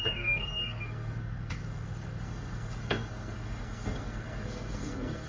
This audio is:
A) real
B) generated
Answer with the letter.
B